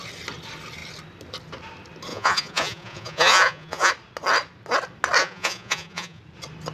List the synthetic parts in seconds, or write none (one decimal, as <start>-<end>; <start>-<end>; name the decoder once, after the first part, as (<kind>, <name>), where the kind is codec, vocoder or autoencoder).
2.1-3.9 (vocoder, Vocos); 5.2-6.2